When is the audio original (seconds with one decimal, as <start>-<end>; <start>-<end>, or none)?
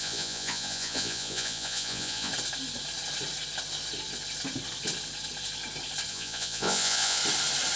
2.3-6.1; 7.2-7.8